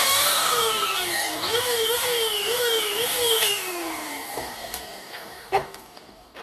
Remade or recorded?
remade